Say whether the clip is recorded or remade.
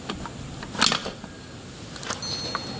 recorded